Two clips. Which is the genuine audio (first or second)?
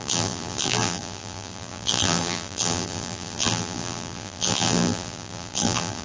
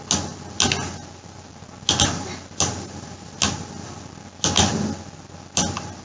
second